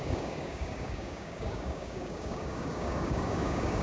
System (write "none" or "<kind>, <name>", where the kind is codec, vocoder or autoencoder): codec, DAC